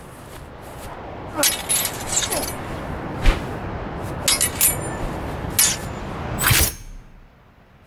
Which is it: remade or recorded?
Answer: recorded